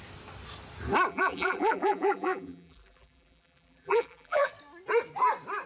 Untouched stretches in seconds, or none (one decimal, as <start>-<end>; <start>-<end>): 0.0-1.1; 4.5-5.7